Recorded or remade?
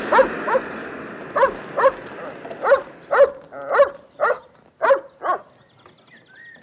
recorded